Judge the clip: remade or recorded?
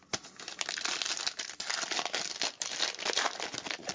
recorded